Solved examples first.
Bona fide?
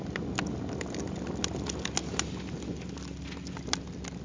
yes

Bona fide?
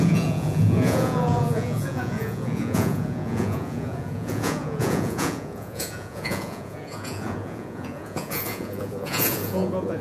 no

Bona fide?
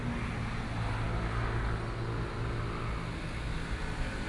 yes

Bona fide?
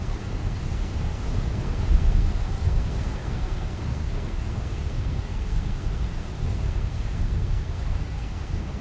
no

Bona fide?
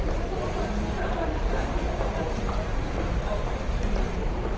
no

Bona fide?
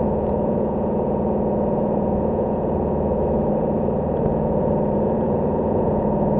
no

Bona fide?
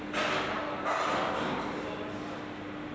yes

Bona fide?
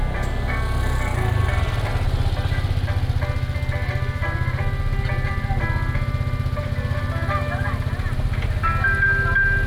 yes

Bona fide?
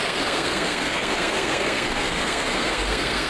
no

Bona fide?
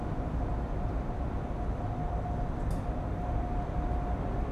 yes